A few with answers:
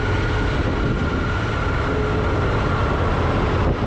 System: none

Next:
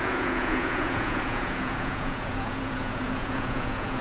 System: vocoder, Vocos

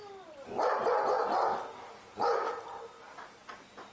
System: none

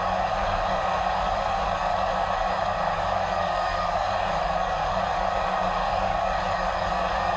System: codec, DAC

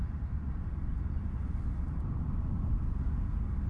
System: vocoder, BigVGAN v2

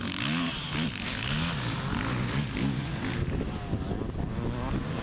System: none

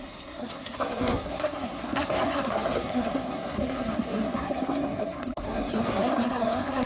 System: codec, SNAC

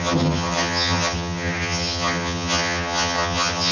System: vocoder, HiFi-GAN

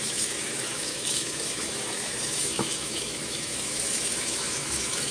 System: autoencoder, DAC-VAE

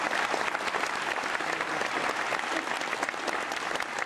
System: none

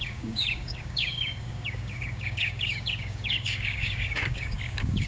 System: codec, DAC